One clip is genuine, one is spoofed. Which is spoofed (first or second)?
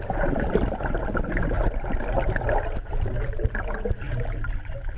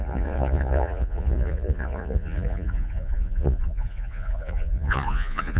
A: second